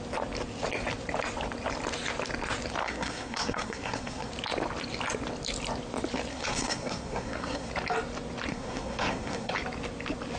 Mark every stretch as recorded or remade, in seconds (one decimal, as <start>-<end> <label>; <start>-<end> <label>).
0.0-2.8 recorded; 2.8-4.3 remade; 4.3-6.3 recorded; 6.3-7.7 remade; 7.7-8.5 recorded; 8.5-9.5 remade; 9.5-10.4 recorded